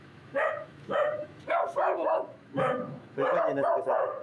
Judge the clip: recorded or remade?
remade